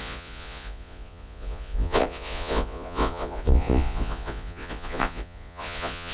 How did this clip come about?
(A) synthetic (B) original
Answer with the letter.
A